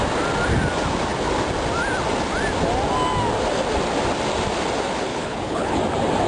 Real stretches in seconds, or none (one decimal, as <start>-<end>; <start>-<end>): 0.0-5.1; 5.8-6.3